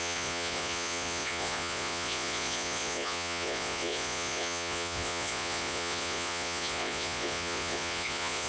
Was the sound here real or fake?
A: fake